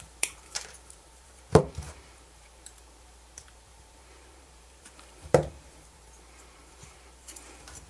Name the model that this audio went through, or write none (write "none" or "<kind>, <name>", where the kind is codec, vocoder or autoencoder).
vocoder, BigVGAN v2